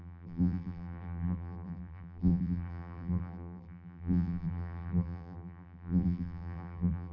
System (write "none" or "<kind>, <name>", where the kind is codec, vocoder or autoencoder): vocoder, BigVGAN v2